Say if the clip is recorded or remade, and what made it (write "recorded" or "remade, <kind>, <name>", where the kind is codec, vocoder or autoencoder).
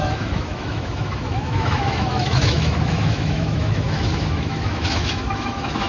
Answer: remade, autoencoder, DAC-VAE